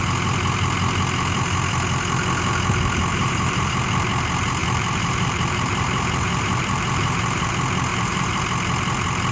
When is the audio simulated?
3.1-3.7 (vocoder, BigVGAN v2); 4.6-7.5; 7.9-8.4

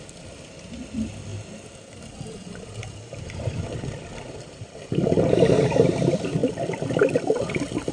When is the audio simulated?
none

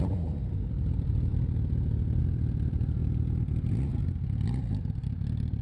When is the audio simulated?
none